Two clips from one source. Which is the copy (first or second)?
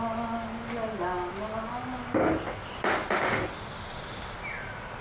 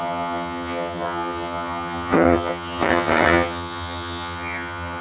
second